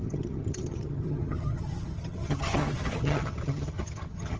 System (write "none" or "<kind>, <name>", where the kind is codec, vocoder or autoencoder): vocoder, HiFi-GAN